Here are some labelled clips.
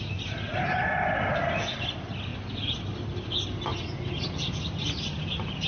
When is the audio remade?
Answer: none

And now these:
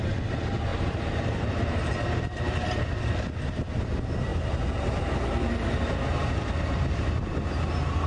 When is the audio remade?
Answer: 0.7-2.4 (vocoder, BigVGAN v2); 4.3-5.4; 6.1-7.3

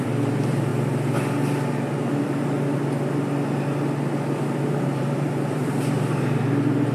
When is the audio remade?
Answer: 0.0-0.7 (vocoder, BigVGAN v2); 4.7-6.9

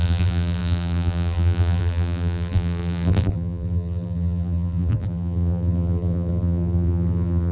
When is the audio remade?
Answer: 0.0-7.5 (vocoder, BigVGAN v2)

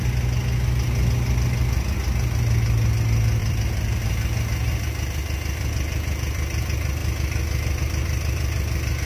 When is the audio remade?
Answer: 3.4-4.0 (vocoder, BigVGAN v2)

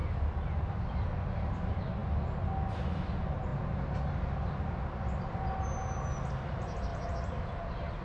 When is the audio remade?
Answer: 6.9-8.0 (vocoder, BigVGAN v2)

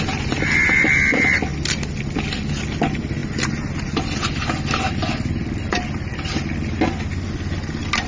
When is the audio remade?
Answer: none